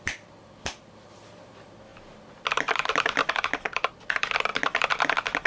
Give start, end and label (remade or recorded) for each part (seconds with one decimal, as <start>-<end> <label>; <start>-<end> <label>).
0.0-5.5 recorded